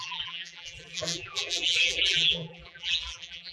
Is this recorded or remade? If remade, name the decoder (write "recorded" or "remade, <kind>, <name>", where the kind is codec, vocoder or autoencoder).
remade, vocoder, BigVGAN v2